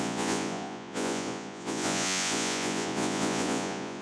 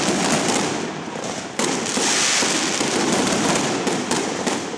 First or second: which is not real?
first